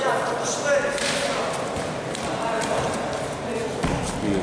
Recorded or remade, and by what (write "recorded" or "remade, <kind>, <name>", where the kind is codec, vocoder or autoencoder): recorded